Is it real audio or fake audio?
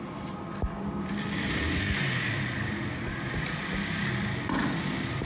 real